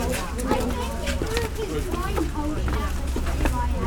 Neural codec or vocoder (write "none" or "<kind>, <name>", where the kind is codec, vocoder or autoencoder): none